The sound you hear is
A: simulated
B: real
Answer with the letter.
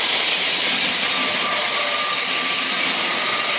B